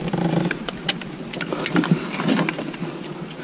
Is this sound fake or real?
real